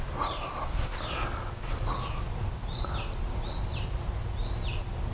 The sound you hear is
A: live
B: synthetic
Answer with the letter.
A